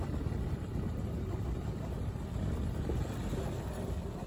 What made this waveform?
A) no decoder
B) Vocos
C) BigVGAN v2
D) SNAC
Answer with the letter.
A